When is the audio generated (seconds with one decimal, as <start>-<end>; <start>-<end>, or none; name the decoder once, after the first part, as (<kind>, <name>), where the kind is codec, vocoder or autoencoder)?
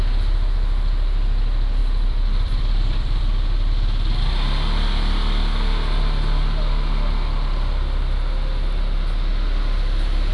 1.8-3.2 (vocoder, BigVGAN v2)